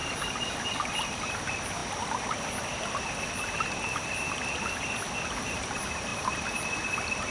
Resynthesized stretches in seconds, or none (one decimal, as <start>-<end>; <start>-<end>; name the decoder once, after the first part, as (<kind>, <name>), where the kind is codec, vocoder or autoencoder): none

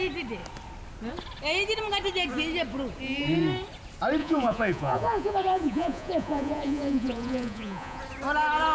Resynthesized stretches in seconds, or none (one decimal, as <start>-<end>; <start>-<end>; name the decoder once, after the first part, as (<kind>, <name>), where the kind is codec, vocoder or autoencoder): 4.2-8.0 (vocoder, Vocos)